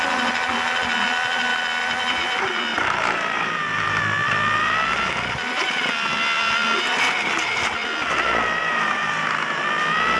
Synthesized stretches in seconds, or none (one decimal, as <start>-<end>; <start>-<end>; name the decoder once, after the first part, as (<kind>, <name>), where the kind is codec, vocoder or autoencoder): 2.7-4.0 (vocoder, BigVGAN v2); 8.6-9.6